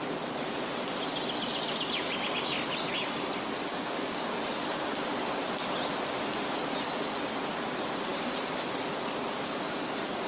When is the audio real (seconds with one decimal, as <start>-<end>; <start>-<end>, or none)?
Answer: 0.0-3.7; 4.4-10.3